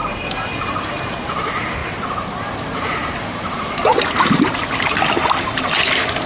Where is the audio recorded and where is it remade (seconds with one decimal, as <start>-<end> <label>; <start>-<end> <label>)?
0.0-1.0 remade; 1.0-1.8 recorded; 1.8-4.5 remade; 4.5-6.3 recorded